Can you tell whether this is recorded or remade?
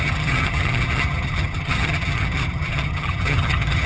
remade